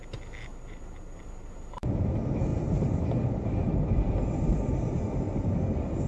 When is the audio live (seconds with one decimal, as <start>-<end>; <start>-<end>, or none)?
0.0-0.5; 2.1-2.5; 5.0-6.1